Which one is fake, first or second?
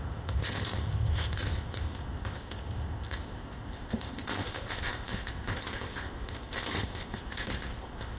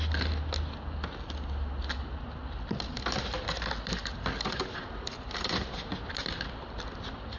first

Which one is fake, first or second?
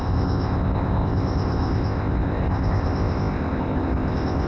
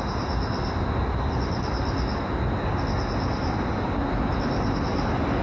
first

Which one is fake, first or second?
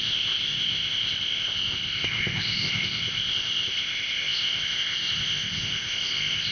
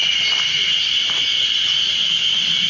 first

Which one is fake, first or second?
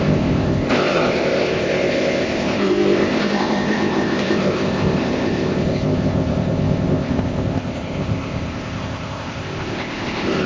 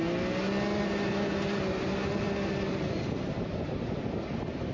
first